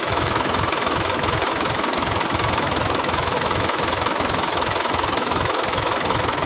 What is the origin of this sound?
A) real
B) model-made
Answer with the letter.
B